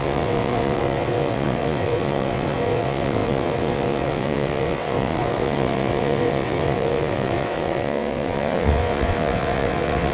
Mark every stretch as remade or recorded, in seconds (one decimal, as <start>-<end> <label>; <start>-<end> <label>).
0.0-10.1 remade